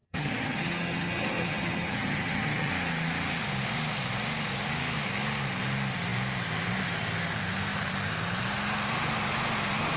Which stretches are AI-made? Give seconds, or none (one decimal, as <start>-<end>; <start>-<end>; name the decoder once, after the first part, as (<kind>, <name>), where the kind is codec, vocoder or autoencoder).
0.0-2.7 (vocoder, HiFi-GAN)